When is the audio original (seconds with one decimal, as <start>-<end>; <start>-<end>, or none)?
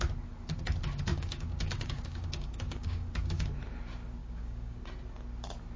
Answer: 0.0-1.1; 3.5-4.2; 4.8-5.8